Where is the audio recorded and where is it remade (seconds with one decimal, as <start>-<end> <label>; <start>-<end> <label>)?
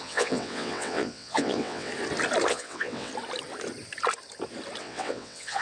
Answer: 0.0-1.9 remade; 1.9-2.5 recorded; 2.5-3.1 remade; 3.1-4.8 recorded; 4.8-5.6 remade